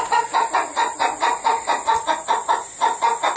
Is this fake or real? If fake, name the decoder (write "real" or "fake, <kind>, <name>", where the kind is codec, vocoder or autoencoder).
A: real